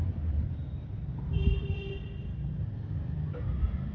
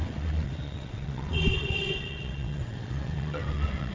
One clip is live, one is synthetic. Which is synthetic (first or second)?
second